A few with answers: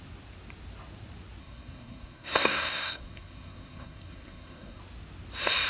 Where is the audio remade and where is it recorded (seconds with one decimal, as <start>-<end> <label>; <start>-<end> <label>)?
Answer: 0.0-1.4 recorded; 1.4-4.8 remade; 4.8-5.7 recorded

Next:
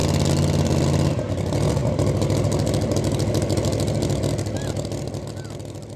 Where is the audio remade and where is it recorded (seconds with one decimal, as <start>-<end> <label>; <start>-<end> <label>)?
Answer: 0.0-6.0 recorded

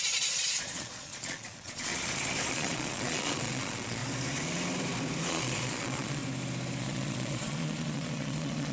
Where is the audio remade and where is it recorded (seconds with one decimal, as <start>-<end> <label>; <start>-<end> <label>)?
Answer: 0.0-1.9 remade; 1.9-2.5 recorded; 2.5-4.0 remade; 4.0-5.3 recorded; 5.3-6.2 remade; 6.2-6.8 recorded; 6.8-8.7 remade

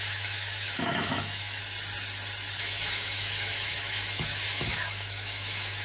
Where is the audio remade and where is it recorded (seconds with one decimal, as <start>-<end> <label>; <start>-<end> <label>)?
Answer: 0.0-1.6 remade; 1.6-2.6 recorded; 2.6-5.8 remade

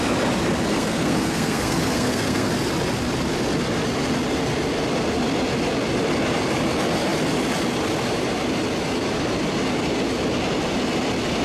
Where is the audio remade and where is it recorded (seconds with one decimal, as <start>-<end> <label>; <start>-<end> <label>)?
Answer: 0.0-0.7 recorded; 0.7-2.5 remade; 2.5-11.4 recorded

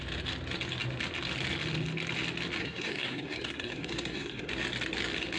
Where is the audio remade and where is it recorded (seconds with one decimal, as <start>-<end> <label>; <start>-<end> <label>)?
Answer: 0.0-2.6 recorded; 2.6-4.5 remade; 4.5-5.4 recorded

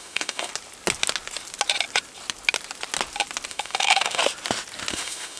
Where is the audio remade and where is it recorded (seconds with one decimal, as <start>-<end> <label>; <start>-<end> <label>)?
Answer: 0.0-0.5 remade; 0.5-3.5 recorded; 3.5-4.2 remade; 4.2-4.9 recorded; 4.9-5.4 remade

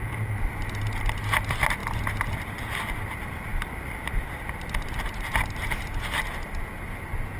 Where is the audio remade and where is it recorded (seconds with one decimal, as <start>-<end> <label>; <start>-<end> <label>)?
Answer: 0.0-1.8 recorded; 1.8-2.8 remade; 2.8-3.5 recorded; 3.5-6.0 remade; 6.0-7.4 recorded